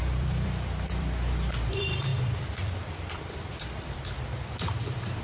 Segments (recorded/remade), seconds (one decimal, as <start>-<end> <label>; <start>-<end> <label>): 0.0-5.2 remade